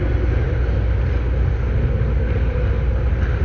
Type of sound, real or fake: real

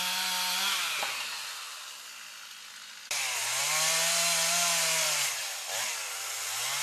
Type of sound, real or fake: real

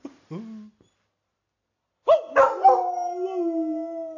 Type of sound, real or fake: real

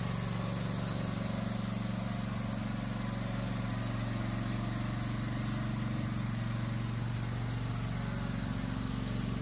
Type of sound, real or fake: real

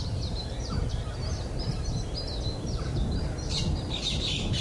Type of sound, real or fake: fake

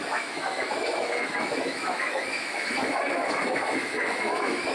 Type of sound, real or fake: fake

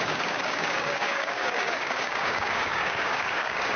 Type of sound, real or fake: fake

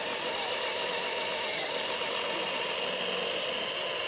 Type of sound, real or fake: real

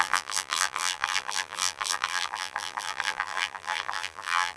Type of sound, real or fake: fake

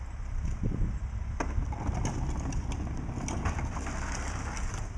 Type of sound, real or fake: real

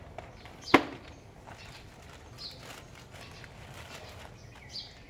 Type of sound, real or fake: real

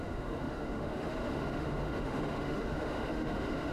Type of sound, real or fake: fake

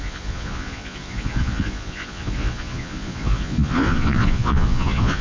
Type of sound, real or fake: fake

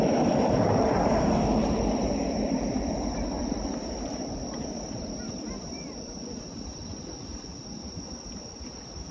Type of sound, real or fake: fake